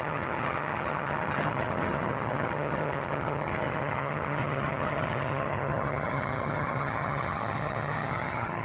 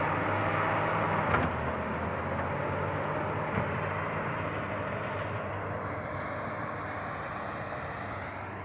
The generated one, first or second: first